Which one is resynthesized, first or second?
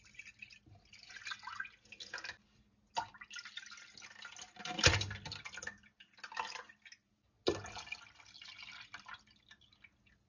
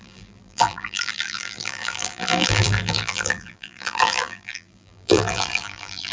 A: second